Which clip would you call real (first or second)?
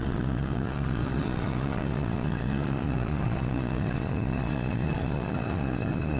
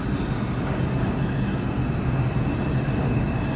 second